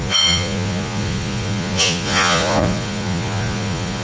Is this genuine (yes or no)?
no